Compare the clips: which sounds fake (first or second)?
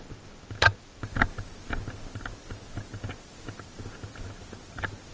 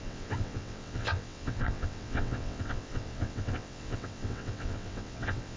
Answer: second